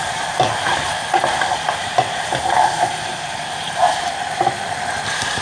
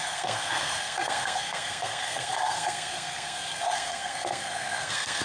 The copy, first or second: second